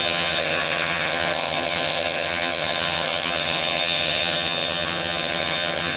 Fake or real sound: fake